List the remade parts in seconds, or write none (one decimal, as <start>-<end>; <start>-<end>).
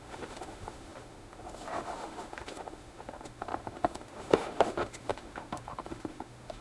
0.0-6.6